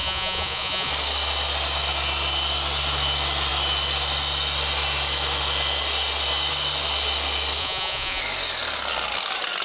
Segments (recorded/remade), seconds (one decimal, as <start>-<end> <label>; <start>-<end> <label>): 0.0-0.9 remade; 0.9-7.6 recorded; 7.6-8.2 remade; 8.2-9.6 recorded